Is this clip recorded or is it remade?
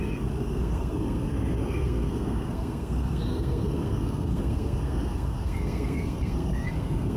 remade